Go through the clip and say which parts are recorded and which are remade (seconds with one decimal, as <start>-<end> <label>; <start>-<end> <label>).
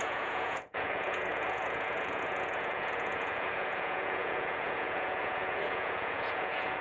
0.0-6.8 remade